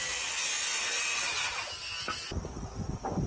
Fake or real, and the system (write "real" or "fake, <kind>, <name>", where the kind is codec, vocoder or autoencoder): real